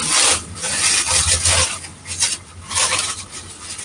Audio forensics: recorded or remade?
recorded